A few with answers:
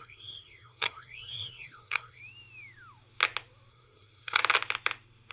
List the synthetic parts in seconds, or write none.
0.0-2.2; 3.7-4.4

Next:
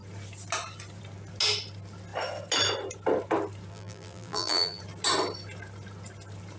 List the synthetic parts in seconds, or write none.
3.7-4.8